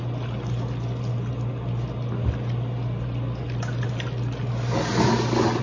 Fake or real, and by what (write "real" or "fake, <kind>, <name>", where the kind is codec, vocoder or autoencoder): real